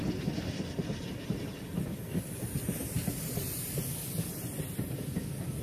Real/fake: real